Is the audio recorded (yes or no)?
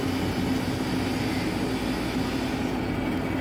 yes